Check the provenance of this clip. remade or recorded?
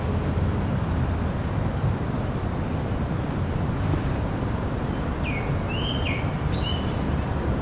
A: recorded